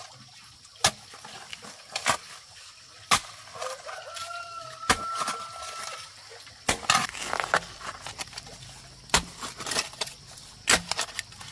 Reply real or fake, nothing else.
real